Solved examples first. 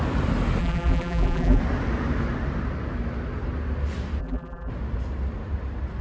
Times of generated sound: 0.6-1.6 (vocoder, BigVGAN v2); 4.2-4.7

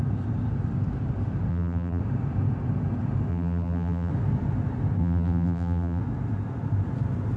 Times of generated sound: 1.5-2.0 (vocoder, BigVGAN v2); 3.3-4.1; 5.0-6.0

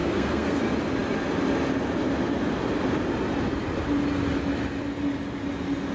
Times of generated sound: 0.0-0.6 (codec, SNAC)

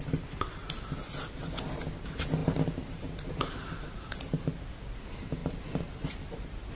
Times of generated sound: 5.4-5.9 (vocoder, BigVGAN v2)

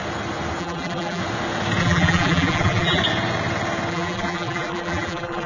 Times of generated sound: 0.6-1.2 (vocoder, BigVGAN v2); 1.8-3.0; 3.9-5.5

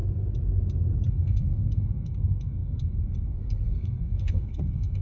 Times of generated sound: 1.1-5.0 (codec, SNAC)

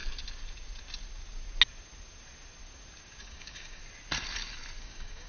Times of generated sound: 3.2-3.8 (codec, DAC); 4.8-5.3

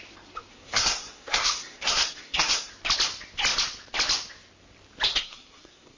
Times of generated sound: 0.5-2.7 (codec, SNAC); 5.1-6.0